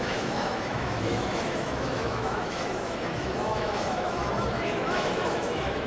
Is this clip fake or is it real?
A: fake